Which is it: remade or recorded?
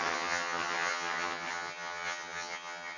remade